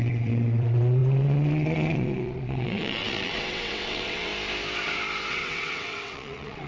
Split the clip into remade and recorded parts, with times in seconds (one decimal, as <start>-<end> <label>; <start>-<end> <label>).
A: 0.0-4.3 remade; 4.3-5.3 recorded; 5.3-6.7 remade